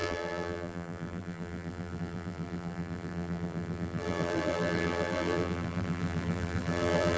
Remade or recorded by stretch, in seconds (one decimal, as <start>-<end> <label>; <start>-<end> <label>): 0.0-7.2 remade